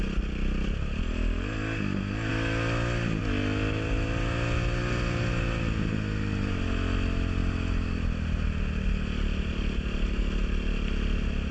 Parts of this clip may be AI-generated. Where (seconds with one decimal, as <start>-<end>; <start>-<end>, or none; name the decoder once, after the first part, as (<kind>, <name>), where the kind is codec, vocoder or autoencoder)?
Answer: none